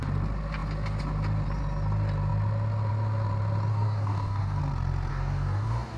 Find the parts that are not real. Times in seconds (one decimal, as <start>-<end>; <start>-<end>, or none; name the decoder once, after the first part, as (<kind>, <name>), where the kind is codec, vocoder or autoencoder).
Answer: 3.7-4.6 (codec, DAC); 5.1-6.0